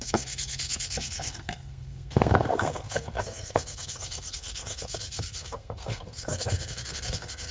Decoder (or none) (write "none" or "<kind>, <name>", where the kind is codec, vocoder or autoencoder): codec, SNAC